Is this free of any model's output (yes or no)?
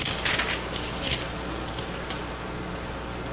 yes